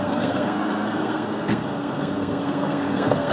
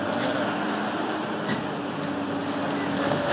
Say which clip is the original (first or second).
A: second